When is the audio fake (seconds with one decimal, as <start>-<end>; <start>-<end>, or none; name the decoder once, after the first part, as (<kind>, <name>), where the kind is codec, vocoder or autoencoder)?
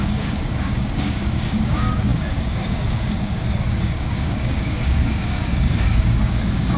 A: 0.0-6.8 (codec, DAC)